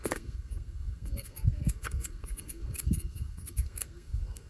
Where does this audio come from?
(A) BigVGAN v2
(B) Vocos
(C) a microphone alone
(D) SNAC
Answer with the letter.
D